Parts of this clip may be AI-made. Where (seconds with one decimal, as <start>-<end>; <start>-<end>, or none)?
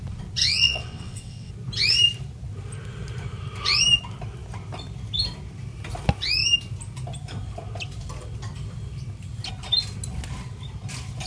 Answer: 0.4-1.5